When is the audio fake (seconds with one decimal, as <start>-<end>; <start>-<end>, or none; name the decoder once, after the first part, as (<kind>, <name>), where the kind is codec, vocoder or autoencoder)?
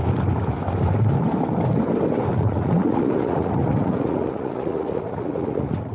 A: 2.3-5.9 (vocoder, Vocos)